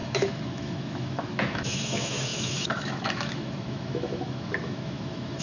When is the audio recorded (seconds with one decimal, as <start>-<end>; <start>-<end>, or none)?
none